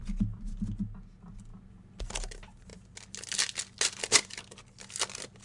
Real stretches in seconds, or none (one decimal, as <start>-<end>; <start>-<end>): 0.0-5.4